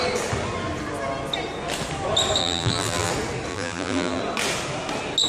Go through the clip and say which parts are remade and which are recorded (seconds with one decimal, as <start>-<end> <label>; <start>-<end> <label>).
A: 0.0-2.4 recorded; 2.4-3.1 remade; 3.1-3.5 recorded; 3.5-4.2 remade; 4.2-5.3 recorded